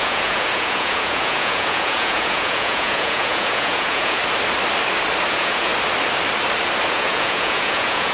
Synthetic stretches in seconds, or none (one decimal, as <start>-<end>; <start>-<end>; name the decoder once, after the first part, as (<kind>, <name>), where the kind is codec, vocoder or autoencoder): 0.0-4.2 (vocoder, Vocos); 5.3-5.7; 6.9-8.1